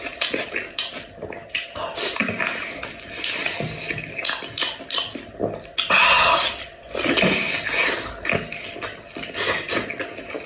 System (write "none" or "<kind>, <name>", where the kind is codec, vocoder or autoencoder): none